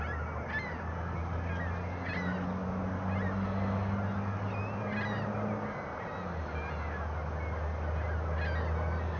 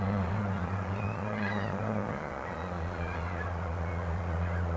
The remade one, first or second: second